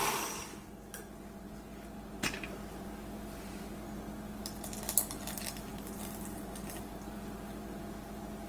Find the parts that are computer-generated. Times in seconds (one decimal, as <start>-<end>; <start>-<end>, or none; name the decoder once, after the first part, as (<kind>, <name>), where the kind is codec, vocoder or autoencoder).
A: none